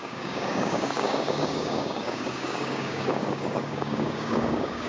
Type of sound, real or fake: fake